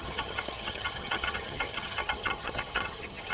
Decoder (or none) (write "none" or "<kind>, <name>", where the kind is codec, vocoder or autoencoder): vocoder, HiFi-GAN